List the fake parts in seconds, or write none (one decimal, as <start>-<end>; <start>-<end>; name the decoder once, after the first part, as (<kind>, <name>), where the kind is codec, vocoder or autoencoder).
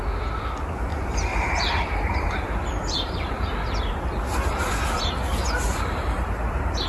0.9-5.0 (vocoder, BigVGAN v2)